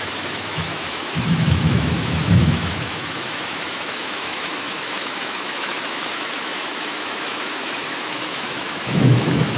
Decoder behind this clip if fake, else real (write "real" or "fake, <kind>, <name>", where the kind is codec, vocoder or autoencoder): fake, autoencoder, DAC-VAE